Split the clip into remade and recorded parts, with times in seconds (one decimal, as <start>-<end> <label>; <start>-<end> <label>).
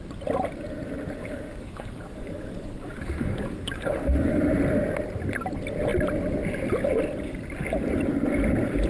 0.0-1.2 recorded; 1.2-4.4 remade; 4.4-8.9 recorded